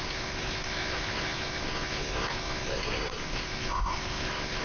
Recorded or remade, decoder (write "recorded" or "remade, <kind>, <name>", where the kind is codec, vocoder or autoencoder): remade, codec, SNAC